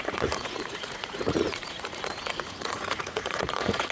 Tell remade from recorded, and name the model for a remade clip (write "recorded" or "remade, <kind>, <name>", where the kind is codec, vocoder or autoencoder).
remade, vocoder, Vocos